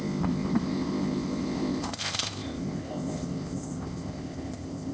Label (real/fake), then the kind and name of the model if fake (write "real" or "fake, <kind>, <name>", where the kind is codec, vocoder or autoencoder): fake, codec, ZipCodec